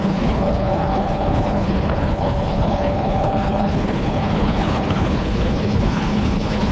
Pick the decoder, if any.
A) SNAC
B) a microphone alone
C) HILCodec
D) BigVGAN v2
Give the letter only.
C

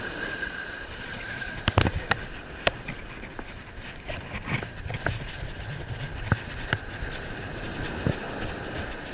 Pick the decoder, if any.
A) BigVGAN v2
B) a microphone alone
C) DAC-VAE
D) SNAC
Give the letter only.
B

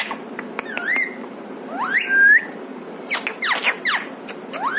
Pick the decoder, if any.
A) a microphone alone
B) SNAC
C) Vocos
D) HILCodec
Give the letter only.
A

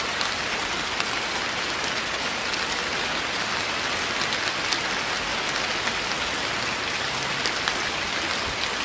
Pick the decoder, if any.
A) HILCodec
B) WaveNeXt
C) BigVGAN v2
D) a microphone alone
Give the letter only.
D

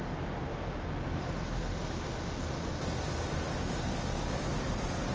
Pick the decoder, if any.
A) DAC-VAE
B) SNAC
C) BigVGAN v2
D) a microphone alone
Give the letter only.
D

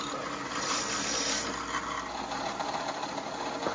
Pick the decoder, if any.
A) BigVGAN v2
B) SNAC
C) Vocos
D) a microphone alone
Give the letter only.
D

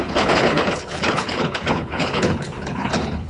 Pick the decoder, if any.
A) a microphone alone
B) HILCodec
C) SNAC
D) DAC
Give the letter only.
B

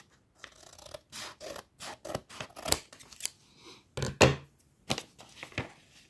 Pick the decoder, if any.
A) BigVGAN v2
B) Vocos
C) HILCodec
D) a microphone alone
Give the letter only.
D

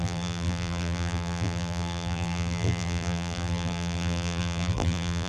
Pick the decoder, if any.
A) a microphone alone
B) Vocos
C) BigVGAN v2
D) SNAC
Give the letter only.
C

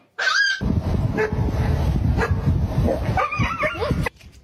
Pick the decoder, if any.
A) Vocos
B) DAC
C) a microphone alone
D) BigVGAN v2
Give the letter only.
D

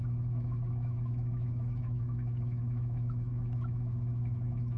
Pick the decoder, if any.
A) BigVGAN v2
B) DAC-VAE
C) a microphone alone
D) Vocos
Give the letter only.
B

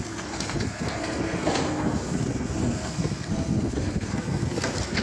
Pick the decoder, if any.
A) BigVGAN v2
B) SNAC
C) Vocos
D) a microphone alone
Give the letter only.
B